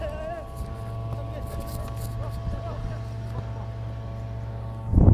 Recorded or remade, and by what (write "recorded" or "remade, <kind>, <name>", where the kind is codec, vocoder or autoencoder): recorded